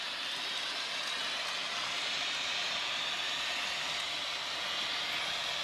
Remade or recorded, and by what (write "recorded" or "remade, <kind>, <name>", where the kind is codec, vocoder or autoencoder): recorded